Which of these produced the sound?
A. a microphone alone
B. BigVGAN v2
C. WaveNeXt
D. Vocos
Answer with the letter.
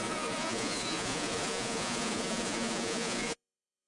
D